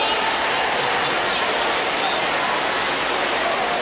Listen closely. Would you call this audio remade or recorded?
recorded